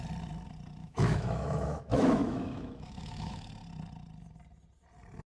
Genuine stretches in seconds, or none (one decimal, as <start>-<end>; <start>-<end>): 0.0-0.8; 3.5-5.3